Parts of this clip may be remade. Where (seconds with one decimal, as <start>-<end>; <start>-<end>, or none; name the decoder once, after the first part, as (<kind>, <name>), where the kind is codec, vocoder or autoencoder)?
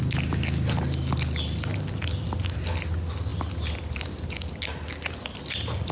none